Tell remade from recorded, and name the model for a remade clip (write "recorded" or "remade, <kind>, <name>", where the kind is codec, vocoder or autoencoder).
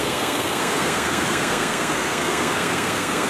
remade, codec, SNAC